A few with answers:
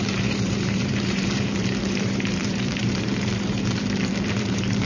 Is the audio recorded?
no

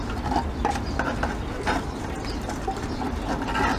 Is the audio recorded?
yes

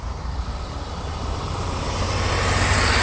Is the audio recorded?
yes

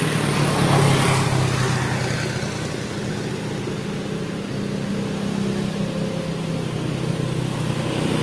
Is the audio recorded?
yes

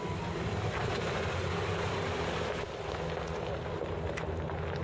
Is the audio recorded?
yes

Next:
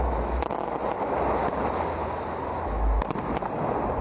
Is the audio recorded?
yes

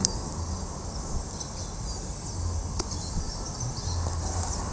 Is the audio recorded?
yes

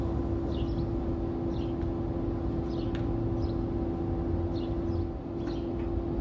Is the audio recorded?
yes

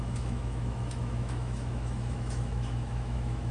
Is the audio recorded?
no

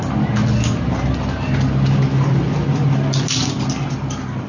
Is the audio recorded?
yes